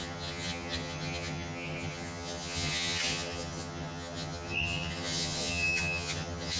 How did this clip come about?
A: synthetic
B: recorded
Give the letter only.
A